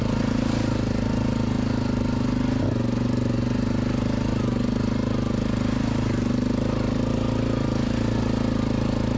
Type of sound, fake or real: real